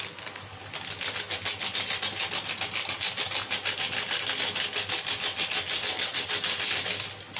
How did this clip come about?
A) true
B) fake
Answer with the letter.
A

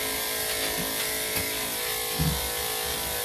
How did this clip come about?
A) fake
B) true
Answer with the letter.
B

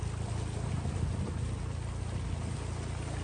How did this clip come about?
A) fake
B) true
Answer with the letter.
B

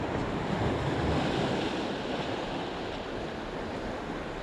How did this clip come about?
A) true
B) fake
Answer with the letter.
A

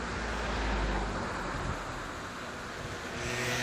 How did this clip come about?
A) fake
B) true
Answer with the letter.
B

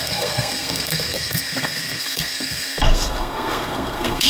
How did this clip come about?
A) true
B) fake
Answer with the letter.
B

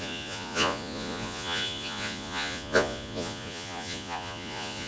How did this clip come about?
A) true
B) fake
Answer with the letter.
B